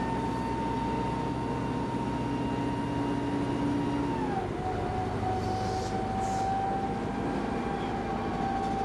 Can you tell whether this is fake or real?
real